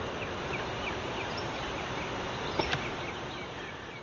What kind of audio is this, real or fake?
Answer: real